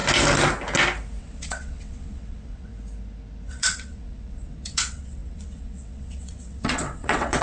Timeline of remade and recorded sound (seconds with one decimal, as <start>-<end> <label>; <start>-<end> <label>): 0.0-1.2 recorded; 1.2-2.7 remade; 2.7-3.5 recorded; 3.5-7.4 remade